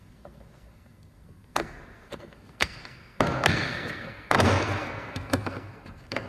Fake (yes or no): yes